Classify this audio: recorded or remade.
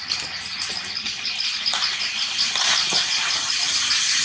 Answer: recorded